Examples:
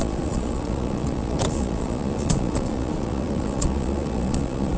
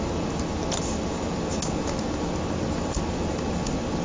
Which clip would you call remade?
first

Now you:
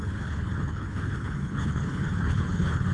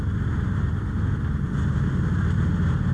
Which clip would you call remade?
first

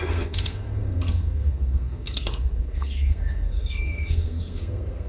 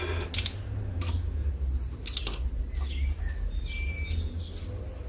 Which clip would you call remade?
first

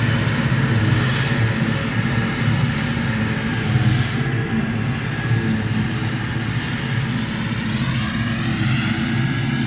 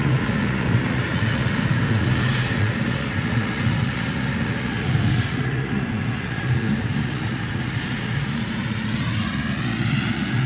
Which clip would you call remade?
second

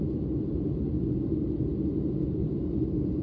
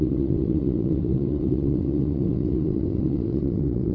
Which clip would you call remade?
second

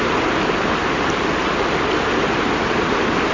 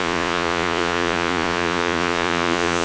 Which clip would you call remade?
second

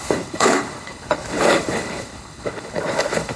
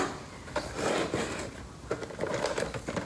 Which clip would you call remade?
first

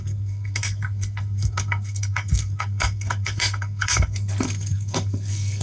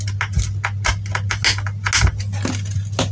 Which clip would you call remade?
first